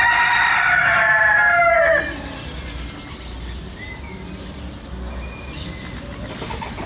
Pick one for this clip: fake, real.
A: real